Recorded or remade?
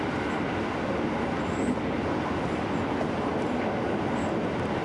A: recorded